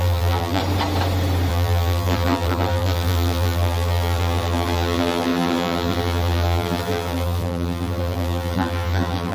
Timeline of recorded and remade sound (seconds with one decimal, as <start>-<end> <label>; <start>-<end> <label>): 0.0-0.6 remade; 0.6-1.5 recorded; 1.5-9.3 remade